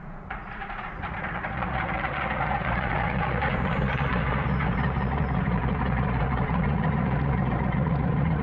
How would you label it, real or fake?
fake